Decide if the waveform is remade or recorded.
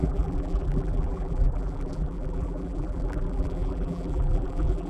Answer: remade